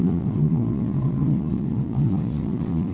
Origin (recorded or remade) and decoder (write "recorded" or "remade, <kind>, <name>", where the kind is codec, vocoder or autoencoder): remade, vocoder, Vocos